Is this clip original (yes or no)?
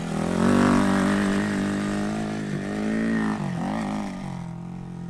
yes